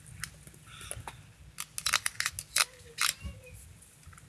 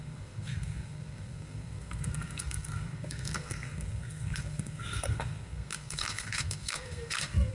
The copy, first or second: second